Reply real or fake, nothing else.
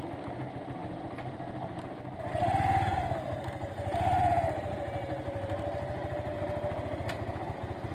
real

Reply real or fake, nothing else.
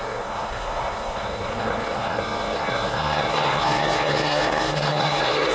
fake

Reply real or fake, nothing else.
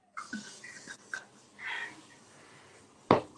real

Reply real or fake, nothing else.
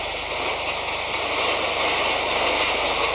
real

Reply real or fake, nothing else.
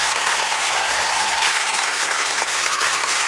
fake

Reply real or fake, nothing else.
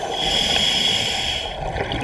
real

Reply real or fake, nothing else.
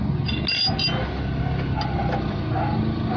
real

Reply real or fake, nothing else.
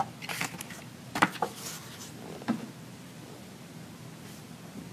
real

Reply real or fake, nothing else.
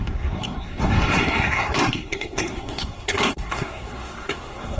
fake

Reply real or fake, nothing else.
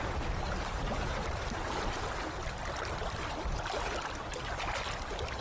real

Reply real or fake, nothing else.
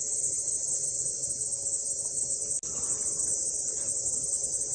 real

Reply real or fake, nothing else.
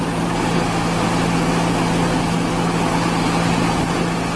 real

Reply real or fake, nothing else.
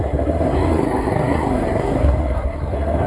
fake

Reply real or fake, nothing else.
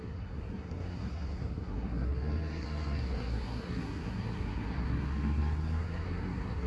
fake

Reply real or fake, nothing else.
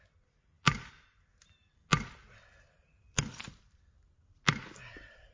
real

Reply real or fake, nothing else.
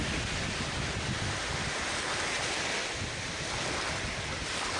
real